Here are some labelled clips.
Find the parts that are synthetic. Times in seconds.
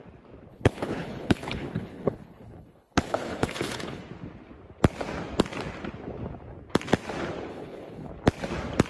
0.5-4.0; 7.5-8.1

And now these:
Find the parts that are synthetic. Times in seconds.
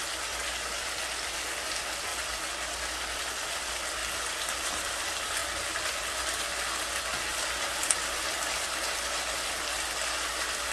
none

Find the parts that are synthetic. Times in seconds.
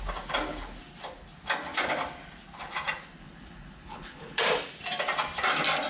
3.2-4.4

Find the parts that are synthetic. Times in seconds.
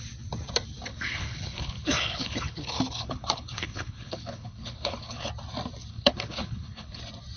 0.9-5.3; 5.9-7.0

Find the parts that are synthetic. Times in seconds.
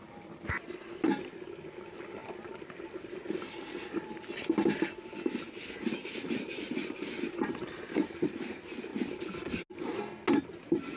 none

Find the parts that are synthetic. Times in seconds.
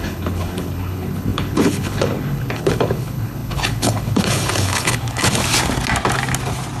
0.0-5.4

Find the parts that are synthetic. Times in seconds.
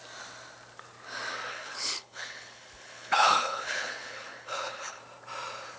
1.5-5.0